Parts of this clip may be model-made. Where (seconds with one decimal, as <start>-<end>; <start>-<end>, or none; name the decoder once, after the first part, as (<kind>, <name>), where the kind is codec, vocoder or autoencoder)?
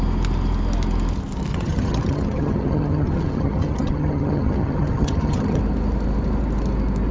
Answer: 1.5-5.6 (vocoder, HiFi-GAN)